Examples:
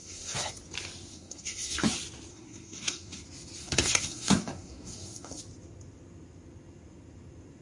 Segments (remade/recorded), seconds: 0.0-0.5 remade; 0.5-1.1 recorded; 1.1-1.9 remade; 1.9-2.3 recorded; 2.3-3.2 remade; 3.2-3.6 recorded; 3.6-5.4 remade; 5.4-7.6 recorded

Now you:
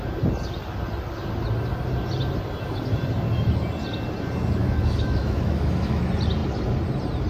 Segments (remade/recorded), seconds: 0.0-4.6 recorded; 4.6-6.0 remade; 6.0-7.3 recorded

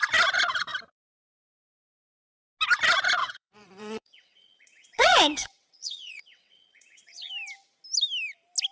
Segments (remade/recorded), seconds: 0.0-3.2 recorded; 3.2-7.3 remade; 7.3-8.7 recorded